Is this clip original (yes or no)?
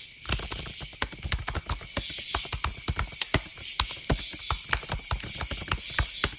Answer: yes